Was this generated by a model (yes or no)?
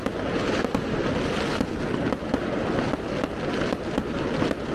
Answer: no